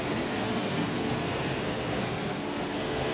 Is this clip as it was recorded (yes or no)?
no